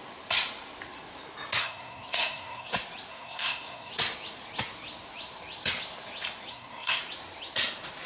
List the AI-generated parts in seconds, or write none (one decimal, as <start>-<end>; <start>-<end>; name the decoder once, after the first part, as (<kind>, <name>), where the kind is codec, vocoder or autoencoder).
1.6-2.7 (codec, SNAC); 3.1-3.9; 6.5-7.0